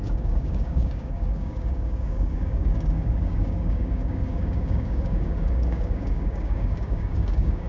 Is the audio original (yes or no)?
no